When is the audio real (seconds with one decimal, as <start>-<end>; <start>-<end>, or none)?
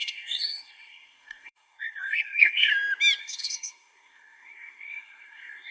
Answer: 2.7-3.2